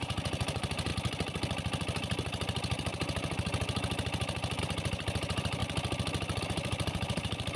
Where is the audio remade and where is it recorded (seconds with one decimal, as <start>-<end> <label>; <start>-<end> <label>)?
0.0-0.9 remade; 0.9-4.6 recorded; 4.6-5.6 remade; 5.6-6.4 recorded; 6.4-7.6 remade